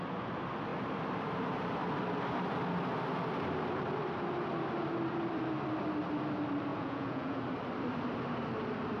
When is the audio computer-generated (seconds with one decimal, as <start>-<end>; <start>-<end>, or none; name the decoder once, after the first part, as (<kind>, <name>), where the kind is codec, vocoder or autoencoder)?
6.7-7.4 (vocoder, Vocos)